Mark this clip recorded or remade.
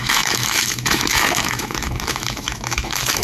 remade